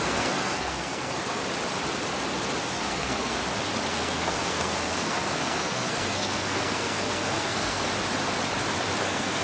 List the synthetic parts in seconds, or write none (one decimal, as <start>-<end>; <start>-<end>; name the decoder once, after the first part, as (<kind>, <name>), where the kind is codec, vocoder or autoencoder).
0.0-1.4 (codec, SNAC); 2.6-3.4; 3.9-7.9; 9.0-9.4